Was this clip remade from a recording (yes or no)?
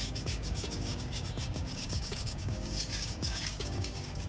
yes